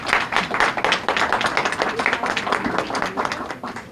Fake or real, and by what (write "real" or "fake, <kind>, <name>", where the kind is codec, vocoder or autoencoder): real